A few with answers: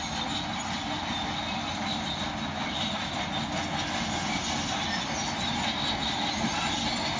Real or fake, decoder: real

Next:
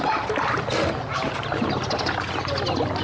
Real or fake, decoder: real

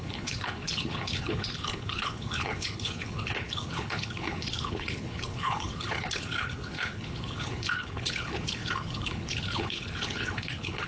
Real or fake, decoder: fake, codec, HILCodec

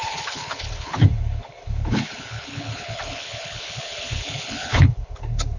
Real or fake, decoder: fake, codec, HILCodec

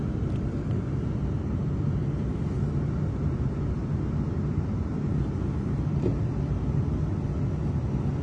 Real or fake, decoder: real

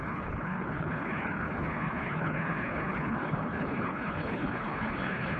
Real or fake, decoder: fake, codec, HILCodec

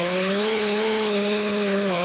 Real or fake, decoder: fake, codec, HILCodec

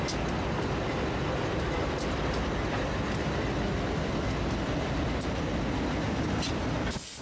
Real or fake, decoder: real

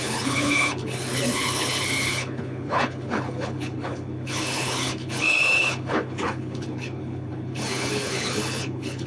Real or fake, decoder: fake, codec, HILCodec